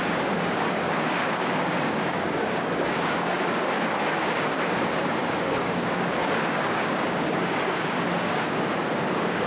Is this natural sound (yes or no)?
no